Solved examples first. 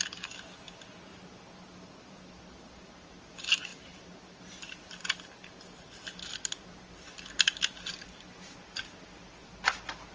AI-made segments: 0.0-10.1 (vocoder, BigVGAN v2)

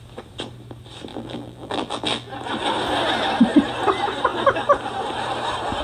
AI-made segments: 1.1-2.3 (vocoder, BigVGAN v2)

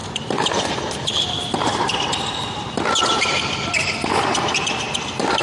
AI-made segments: 0.0-1.3 (vocoder, BigVGAN v2)

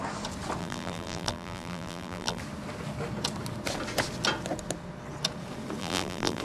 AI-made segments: 0.6-2.4 (vocoder, BigVGAN v2); 5.8-6.4

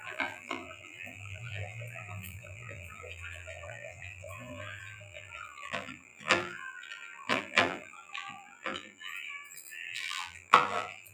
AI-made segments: 0.0-11.1 (vocoder, BigVGAN v2)

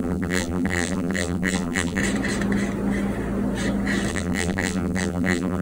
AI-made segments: 0.0-2.0 (vocoder, BigVGAN v2); 4.1-5.6

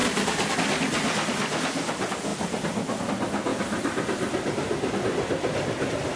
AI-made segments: 0.0-0.5 (vocoder, BigVGAN v2); 2.3-3.0; 3.5-4.9